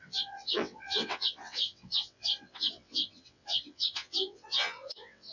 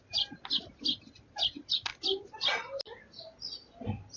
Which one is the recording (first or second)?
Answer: second